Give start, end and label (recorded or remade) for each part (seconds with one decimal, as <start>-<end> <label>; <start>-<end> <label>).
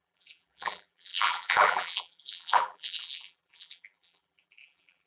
0.0-5.1 remade